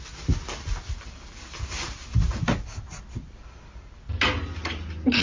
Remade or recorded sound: recorded